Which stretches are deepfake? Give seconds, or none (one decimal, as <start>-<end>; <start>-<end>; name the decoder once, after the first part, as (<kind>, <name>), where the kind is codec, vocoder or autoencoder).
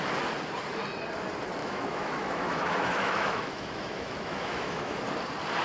1.6-5.0 (autoencoder, DAC-VAE)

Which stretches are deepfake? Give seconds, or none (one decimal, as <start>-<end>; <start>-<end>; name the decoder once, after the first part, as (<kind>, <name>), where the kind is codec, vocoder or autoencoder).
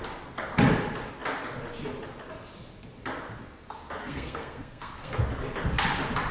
4.0-5.2 (codec, SNAC)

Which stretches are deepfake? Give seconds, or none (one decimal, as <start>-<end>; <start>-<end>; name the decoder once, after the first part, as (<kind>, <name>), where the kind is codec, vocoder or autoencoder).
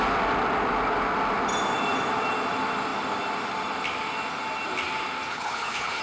5.3-6.0 (codec, HILCodec)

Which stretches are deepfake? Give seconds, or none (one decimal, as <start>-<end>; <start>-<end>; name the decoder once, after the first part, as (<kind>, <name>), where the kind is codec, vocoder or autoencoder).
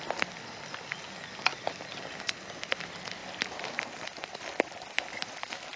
none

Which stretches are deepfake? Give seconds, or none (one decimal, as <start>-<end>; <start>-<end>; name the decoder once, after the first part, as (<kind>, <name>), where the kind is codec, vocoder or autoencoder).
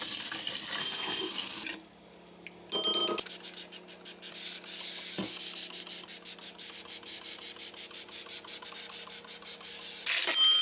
0.8-1.3 (codec, ZipCodec)